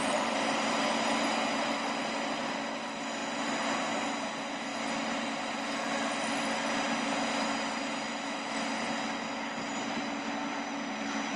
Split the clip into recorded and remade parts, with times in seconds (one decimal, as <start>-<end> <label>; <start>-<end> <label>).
0.0-0.7 remade; 0.7-11.4 recorded